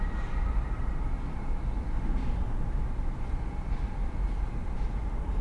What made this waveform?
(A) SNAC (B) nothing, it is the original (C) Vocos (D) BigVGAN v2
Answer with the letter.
B